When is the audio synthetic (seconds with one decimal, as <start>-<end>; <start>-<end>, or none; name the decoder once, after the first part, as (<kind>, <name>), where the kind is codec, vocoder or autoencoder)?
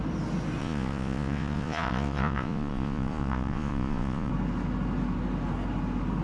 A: 0.6-4.3 (vocoder, Vocos)